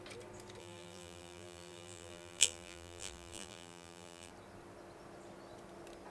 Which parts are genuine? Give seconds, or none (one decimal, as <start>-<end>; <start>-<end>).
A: 0.0-0.6; 4.3-6.1